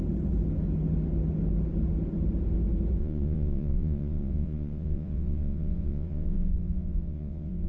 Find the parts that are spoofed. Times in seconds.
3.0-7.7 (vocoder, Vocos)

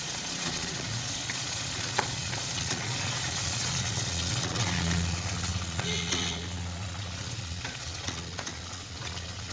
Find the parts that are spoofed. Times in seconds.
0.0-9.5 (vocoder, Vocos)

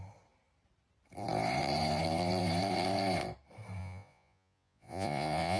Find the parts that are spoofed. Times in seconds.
3.8-5.6 (vocoder, Vocos)

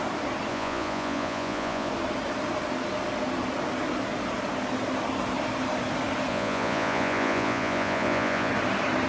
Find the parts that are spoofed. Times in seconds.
0.5-1.9 (vocoder, Vocos); 6.3-8.5